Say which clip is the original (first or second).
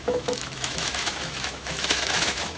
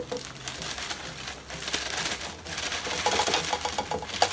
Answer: second